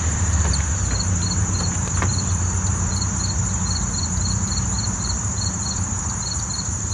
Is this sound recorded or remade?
remade